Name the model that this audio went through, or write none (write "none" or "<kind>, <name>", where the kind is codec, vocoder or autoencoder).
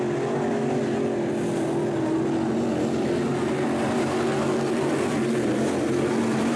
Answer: none